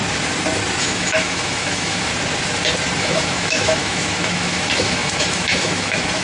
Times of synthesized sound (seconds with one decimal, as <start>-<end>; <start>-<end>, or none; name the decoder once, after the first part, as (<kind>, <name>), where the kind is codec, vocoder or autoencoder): 0.8-2.1 (autoencoder, DAC-VAE); 3.0-6.2